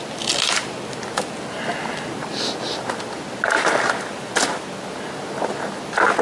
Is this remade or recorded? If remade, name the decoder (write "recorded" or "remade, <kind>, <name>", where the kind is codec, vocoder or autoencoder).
recorded